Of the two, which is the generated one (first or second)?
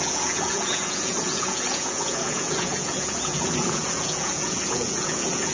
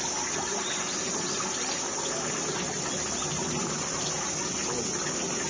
first